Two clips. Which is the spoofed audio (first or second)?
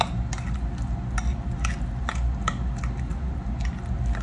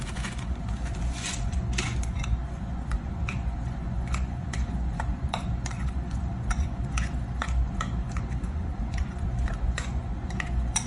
second